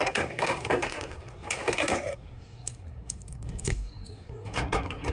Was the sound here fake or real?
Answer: fake